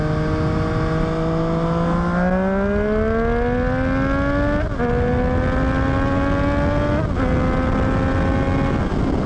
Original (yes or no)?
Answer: yes